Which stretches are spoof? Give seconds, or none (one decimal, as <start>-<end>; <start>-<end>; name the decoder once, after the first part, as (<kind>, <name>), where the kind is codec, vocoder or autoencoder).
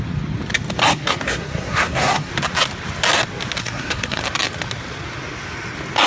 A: 0.9-2.3 (codec, SNAC); 3.6-4.2